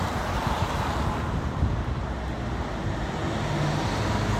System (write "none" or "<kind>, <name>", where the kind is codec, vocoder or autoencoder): none